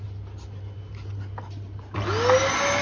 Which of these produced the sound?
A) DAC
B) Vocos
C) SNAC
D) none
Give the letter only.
D